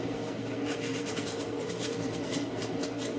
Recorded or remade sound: remade